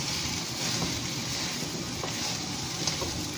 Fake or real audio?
real